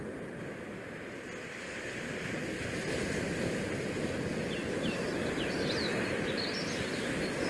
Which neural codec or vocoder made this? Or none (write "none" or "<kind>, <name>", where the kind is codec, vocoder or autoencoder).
vocoder, BigVGAN v2